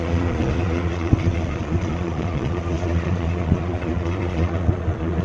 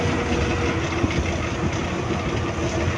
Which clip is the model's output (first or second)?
first